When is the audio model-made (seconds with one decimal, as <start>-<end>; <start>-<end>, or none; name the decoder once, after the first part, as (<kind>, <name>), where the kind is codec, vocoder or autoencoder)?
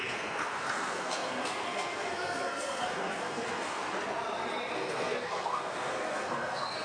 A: 0.0-3.8 (codec, SNAC); 4.7-6.8